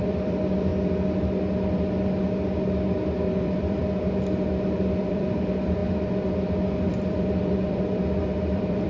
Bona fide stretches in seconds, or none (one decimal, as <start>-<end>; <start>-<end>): 0.7-3.3; 3.8-5.1; 5.8-6.9